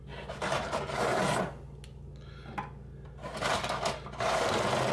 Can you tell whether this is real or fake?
real